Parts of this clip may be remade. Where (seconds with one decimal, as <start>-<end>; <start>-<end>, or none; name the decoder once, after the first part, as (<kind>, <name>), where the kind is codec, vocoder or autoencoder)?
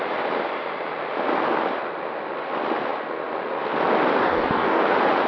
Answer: 4.2-4.8 (codec, DAC)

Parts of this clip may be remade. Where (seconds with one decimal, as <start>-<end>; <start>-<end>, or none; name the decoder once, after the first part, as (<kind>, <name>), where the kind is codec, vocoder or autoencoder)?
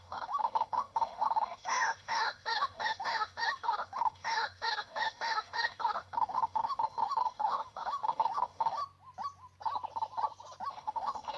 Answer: 0.0-8.8 (autoencoder, DAC-VAE); 10.7-11.4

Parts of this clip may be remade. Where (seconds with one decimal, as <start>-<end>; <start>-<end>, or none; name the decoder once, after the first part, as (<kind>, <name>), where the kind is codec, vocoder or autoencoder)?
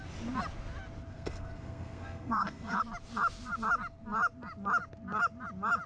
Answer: 1.1-2.8 (codec, SNAC)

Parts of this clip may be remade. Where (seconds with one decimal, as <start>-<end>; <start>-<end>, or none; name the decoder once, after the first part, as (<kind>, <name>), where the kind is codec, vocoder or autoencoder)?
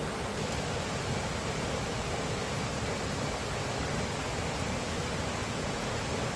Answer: 5.4-6.0 (vocoder, Vocos)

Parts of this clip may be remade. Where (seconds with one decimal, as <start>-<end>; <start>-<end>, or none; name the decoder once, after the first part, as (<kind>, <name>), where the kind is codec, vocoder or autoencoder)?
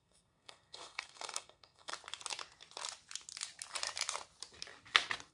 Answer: 0.0-1.9 (codec, SNAC)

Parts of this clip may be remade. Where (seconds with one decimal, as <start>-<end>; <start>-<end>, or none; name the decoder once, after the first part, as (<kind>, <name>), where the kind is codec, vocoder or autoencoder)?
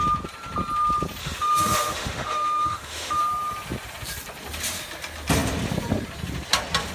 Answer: 1.2-3.2 (autoencoder, DAC-VAE)